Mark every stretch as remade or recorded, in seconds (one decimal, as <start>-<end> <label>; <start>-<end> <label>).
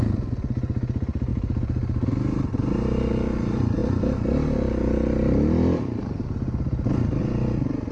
0.0-1.3 recorded; 1.3-3.1 remade; 3.1-7.9 recorded